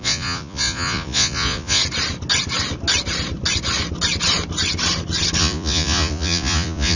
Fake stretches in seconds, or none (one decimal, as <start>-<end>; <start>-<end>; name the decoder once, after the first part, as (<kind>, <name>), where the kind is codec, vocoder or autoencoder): 0.0-1.8 (vocoder, Vocos); 5.4-7.0